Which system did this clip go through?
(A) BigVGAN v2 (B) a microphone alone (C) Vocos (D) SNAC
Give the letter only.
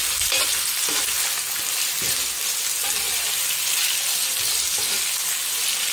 B